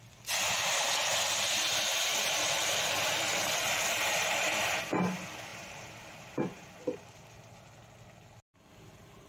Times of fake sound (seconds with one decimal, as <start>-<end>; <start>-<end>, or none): 2.1-4.6; 5.5-6.7